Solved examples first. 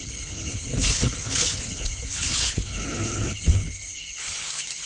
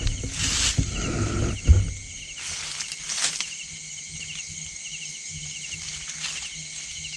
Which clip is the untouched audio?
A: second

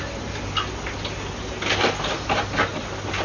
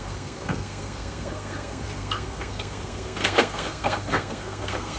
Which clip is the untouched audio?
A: first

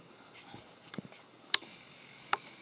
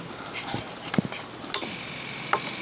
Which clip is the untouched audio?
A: second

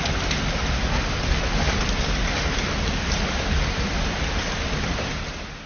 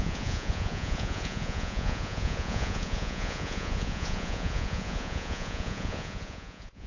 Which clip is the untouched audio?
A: first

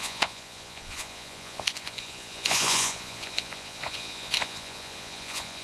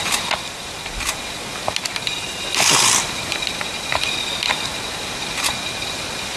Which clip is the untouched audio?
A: second